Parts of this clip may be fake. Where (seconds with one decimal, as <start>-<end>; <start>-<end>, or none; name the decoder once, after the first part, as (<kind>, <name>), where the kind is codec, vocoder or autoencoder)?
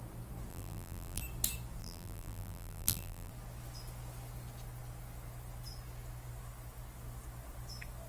0.5-1.2 (vocoder, BigVGAN v2); 1.8-3.3